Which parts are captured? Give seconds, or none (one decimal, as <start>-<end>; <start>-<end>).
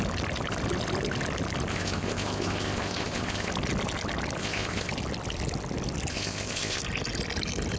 0.0-1.7; 3.5-4.4; 4.9-6.1; 6.8-7.8